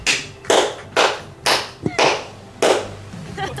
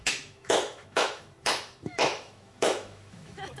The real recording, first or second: first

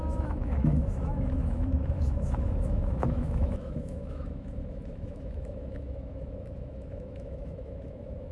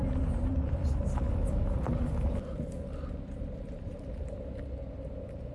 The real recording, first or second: second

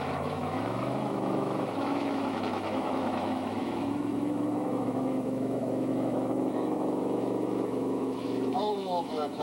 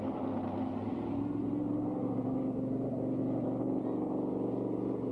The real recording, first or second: second